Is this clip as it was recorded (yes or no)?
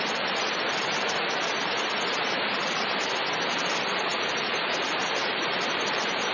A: no